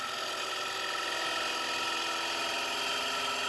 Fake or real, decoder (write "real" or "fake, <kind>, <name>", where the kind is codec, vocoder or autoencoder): real